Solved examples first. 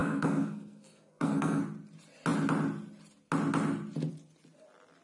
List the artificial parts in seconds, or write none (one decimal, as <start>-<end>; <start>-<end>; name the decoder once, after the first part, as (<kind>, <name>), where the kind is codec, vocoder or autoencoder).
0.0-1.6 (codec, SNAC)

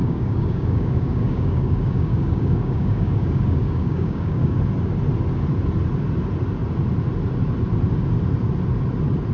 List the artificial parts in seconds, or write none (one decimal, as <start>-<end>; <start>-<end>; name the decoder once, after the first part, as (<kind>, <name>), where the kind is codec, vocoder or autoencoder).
0.0-4.6 (codec, DAC)

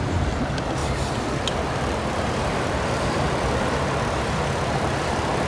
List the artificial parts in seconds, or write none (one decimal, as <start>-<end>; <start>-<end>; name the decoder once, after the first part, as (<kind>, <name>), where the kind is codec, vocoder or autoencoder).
none

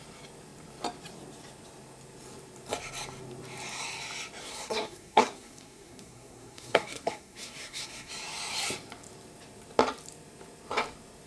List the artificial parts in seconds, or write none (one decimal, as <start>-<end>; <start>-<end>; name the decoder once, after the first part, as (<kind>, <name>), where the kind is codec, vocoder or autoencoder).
4.4-8.1 (codec, SNAC)

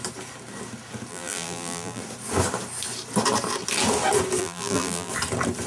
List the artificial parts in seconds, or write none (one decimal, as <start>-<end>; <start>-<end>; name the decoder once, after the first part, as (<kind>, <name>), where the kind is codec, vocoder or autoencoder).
1.1-2.0 (vocoder, BigVGAN v2); 4.4-5.1

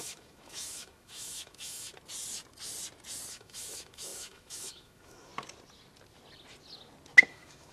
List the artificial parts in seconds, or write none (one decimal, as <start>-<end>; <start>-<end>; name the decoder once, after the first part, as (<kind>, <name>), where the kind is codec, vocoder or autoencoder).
0.0-1.9 (autoencoder, DAC-VAE); 3.3-5.3; 7.3-7.7

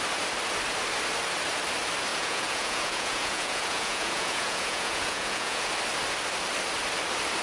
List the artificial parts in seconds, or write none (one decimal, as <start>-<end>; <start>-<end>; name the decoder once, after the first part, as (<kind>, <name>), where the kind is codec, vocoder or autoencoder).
2.1-5.7 (vocoder, Vocos)

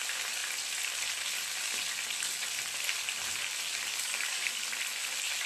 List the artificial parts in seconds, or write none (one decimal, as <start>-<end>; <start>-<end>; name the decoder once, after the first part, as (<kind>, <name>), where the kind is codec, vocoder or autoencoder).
3.9-4.5 (codec, DAC)